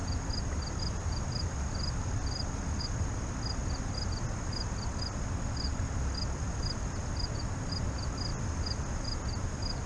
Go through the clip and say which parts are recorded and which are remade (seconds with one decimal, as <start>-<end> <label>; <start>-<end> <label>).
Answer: 0.0-2.8 remade; 2.8-3.6 recorded; 3.6-7.7 remade; 7.7-8.3 recorded; 8.3-8.9 remade; 8.9-9.9 recorded